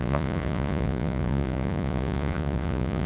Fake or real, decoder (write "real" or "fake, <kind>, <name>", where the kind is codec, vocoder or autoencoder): fake, vocoder, Vocos